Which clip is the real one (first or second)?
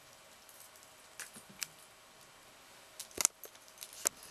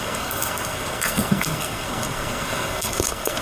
first